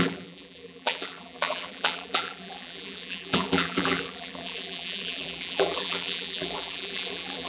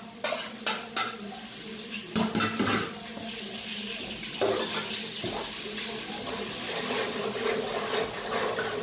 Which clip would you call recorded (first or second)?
second